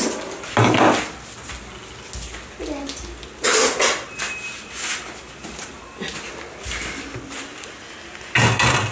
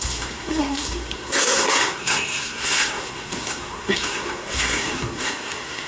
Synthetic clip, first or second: second